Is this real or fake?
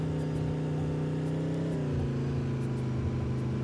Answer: real